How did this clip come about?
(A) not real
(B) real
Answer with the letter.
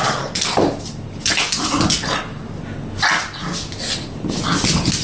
B